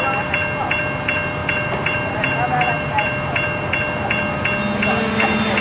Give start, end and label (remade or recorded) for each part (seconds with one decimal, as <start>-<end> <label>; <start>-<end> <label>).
0.0-1.4 recorded; 1.4-4.3 remade; 4.3-5.6 recorded